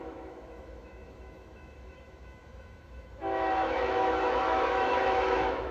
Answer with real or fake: fake